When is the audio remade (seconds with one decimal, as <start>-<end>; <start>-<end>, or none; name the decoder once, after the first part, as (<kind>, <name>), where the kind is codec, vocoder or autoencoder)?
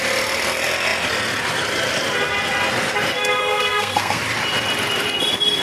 3.4-4.2 (codec, SNAC)